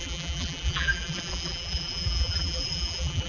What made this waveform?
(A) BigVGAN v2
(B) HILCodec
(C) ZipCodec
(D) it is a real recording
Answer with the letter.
A